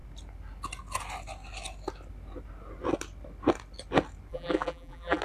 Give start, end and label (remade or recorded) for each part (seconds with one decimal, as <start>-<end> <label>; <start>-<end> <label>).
0.0-4.3 recorded; 4.3-5.2 remade